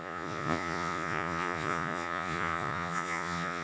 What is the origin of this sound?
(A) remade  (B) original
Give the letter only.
A